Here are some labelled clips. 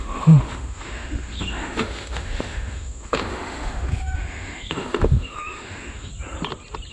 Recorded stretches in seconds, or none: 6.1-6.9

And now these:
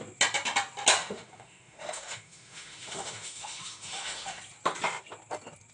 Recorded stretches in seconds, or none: 0.0-1.0; 4.4-5.7

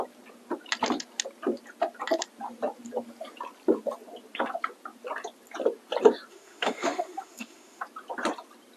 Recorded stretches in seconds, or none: 0.0-6.3; 7.8-8.8